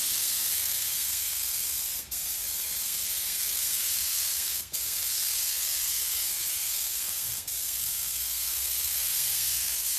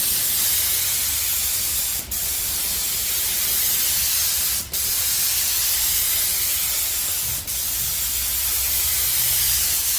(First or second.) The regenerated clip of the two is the first